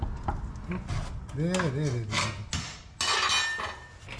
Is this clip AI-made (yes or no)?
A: no